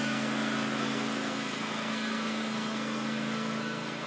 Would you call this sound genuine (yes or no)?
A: no